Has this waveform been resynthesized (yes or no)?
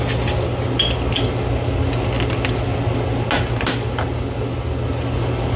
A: no